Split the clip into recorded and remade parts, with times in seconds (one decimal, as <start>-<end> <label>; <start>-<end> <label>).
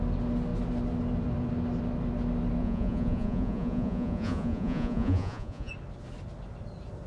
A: 0.0-2.6 recorded; 2.6-5.7 remade; 5.7-7.1 recorded